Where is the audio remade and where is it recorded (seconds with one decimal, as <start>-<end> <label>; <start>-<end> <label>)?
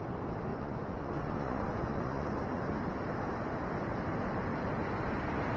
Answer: 0.0-0.5 recorded; 0.5-2.8 remade; 2.8-5.6 recorded